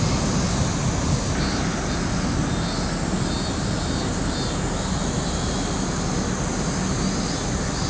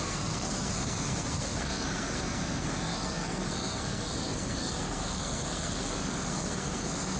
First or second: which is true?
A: first